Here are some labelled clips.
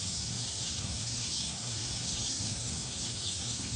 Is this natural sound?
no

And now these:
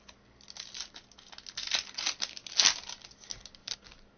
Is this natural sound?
yes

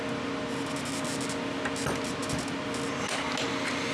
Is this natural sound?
yes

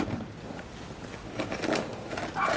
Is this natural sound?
yes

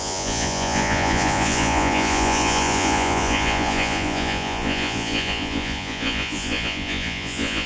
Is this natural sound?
no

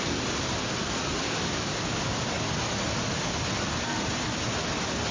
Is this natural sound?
yes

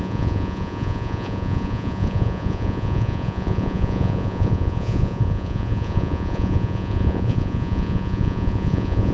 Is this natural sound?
no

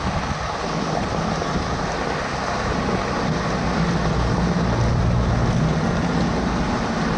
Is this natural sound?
yes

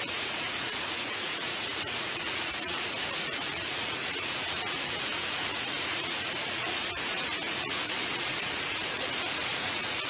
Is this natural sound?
no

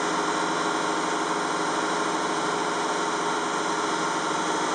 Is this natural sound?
yes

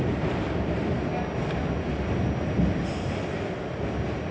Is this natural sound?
yes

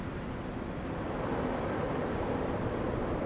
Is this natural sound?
yes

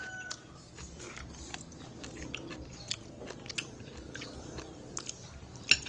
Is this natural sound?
yes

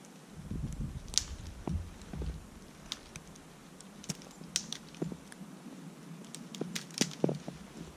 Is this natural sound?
yes